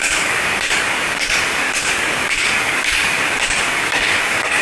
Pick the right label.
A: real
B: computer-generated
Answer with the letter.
B